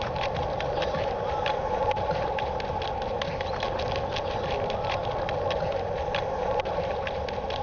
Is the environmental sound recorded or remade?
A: recorded